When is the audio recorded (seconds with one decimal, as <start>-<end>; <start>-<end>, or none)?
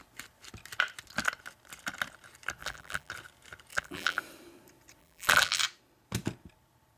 0.0-2.6; 3.1-3.7; 4.2-5.0; 5.6-7.0